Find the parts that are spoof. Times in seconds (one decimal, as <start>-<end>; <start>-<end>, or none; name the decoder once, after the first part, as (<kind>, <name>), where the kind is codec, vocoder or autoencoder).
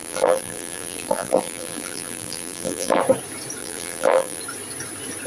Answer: 0.0-3.0 (vocoder, BigVGAN v2); 3.6-4.4